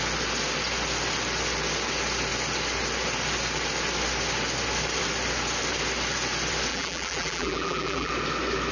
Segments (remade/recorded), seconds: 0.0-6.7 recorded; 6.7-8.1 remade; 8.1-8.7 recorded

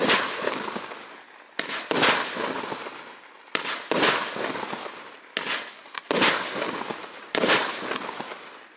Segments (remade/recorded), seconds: 0.0-8.8 recorded

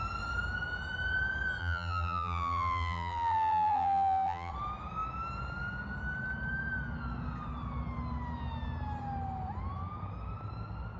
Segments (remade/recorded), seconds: 0.0-1.6 recorded; 1.6-4.5 remade; 4.5-11.0 recorded

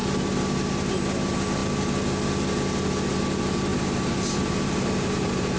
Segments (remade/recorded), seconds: 0.0-3.7 recorded; 3.7-5.6 remade

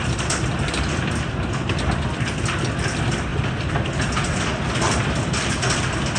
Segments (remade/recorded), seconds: 0.0-3.3 recorded; 3.3-5.5 remade; 5.5-6.2 recorded

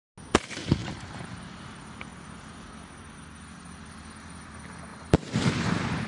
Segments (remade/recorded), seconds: 0.0-0.8 recorded; 0.8-1.3 remade; 1.3-4.9 recorded; 4.9-5.5 remade; 5.5-6.1 recorded